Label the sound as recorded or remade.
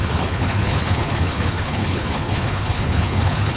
remade